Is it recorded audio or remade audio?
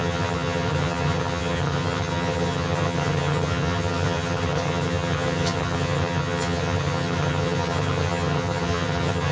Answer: remade